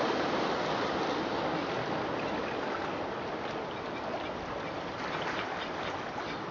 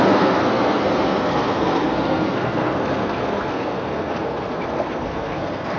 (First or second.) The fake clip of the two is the second